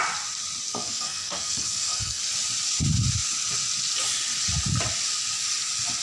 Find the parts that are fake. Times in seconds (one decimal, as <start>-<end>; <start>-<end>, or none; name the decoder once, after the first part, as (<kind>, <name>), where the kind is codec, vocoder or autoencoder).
0.7-2.2 (codec, SNAC)